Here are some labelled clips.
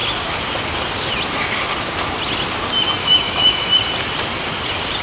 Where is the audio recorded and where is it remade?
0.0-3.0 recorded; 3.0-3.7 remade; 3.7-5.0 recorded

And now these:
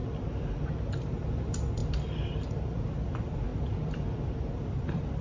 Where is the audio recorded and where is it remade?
0.0-0.9 recorded; 0.9-3.5 remade; 3.5-4.5 recorded; 4.5-5.2 remade

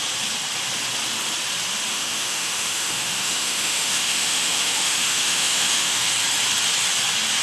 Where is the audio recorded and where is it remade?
0.0-1.9 recorded; 1.9-6.1 remade; 6.1-7.4 recorded

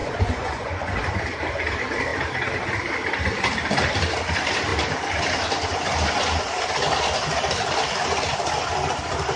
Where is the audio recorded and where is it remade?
0.0-0.9 remade; 0.9-9.4 recorded

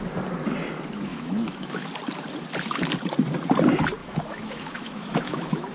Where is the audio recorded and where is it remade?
0.0-1.1 recorded; 1.1-1.9 remade; 1.9-4.0 recorded; 4.0-5.7 remade